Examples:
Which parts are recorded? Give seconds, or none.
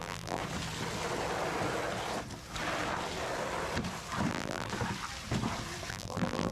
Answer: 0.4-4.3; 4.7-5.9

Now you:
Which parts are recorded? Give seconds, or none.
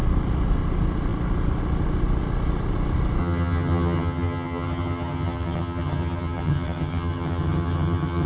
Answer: 0.0-3.2